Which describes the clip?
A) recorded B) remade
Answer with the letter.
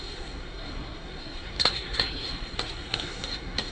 B